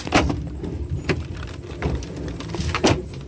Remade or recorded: recorded